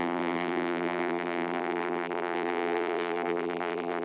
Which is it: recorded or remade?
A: remade